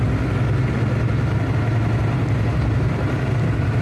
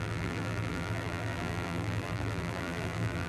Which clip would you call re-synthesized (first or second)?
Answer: second